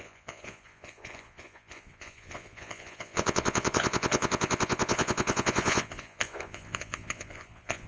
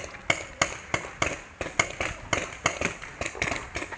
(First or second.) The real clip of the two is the second